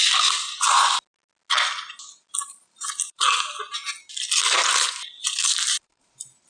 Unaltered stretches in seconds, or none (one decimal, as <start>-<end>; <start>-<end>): 0.0-2.4; 3.5-5.2; 6.1-6.5